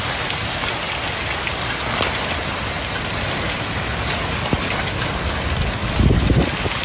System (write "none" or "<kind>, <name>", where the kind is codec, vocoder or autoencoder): none